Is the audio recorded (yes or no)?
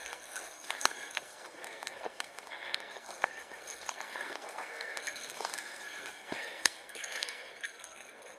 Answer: no